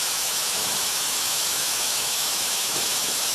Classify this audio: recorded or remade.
remade